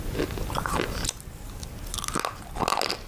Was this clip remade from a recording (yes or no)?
no